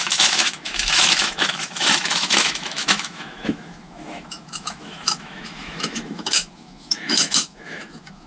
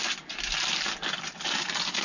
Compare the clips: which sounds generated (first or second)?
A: first